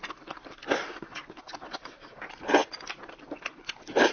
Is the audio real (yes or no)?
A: yes